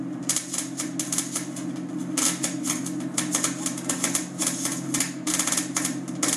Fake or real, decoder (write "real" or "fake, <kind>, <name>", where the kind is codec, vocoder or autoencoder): real